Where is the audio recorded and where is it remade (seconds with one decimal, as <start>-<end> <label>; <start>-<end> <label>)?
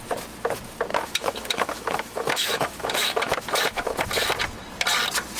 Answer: 0.0-0.9 recorded; 0.9-4.1 remade; 4.1-5.4 recorded